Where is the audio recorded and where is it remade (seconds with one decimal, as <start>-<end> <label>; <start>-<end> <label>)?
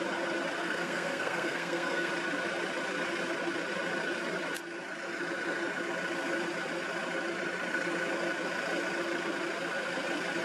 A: 0.0-0.6 recorded; 0.6-2.1 remade; 2.1-10.4 recorded